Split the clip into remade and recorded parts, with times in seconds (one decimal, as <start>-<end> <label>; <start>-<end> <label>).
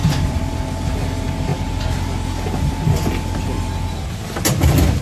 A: 0.0-0.5 remade; 0.5-5.0 recorded